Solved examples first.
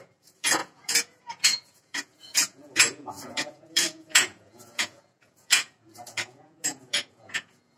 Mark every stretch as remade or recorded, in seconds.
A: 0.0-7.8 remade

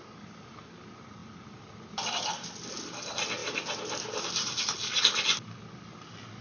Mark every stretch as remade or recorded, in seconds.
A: 0.0-6.4 recorded

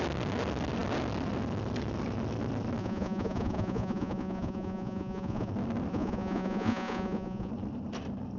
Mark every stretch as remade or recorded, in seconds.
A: 0.0-2.8 recorded; 2.8-5.5 remade; 5.5-5.9 recorded; 5.9-7.5 remade; 7.5-8.4 recorded

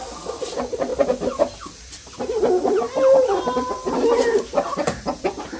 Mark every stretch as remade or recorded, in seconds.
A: 0.0-5.6 recorded

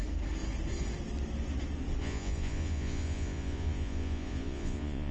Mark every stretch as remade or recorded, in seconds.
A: 0.0-2.0 recorded; 2.0-5.1 remade

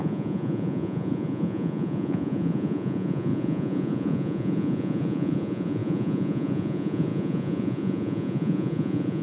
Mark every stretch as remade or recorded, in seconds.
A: 0.0-9.2 remade

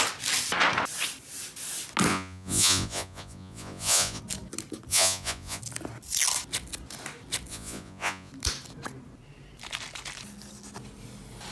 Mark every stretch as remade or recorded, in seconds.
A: 0.0-2.1 recorded; 2.1-4.2 remade; 4.2-4.9 recorded; 4.9-5.6 remade; 5.6-7.5 recorded; 7.5-8.3 remade; 8.3-11.5 recorded